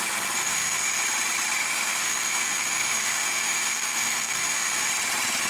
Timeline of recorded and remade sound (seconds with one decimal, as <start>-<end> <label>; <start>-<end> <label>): 0.0-0.4 recorded; 0.4-1.0 remade; 1.0-1.6 recorded; 1.6-4.9 remade; 4.9-5.5 recorded